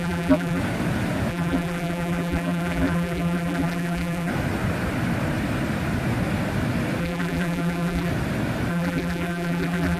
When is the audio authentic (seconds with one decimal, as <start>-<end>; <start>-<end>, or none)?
0.6-1.3; 4.3-7.0; 8.1-8.7